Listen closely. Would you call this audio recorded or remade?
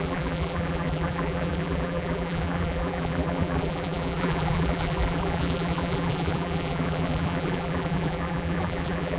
remade